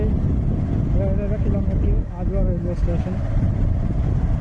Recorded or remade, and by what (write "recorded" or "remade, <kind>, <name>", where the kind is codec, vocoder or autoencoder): recorded